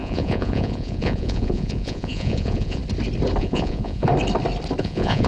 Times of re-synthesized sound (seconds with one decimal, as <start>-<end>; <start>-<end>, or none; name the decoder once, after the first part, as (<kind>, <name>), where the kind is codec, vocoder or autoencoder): 0.0-2.8 (vocoder, Vocos); 3.4-4.1; 4.8-5.3